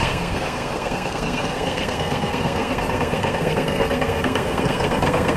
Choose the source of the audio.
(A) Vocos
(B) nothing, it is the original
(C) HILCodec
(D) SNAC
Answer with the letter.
D